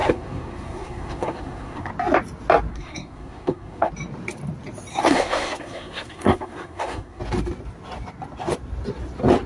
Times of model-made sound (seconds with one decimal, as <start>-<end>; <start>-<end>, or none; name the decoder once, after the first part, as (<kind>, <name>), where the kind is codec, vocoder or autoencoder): 0.0-1.9 (codec, SNAC); 2.7-3.9; 4.9-7.2